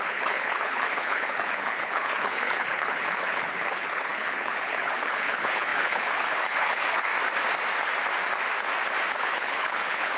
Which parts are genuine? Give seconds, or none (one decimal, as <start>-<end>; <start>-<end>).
7.1-9.1